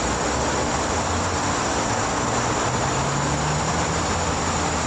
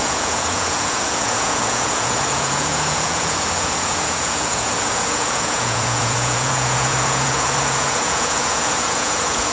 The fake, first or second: second